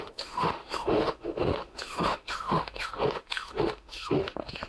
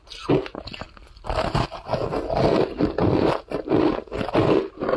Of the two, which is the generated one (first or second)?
first